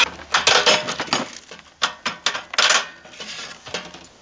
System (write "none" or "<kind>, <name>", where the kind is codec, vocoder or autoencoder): none